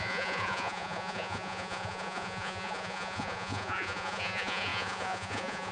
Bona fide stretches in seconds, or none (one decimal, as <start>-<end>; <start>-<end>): none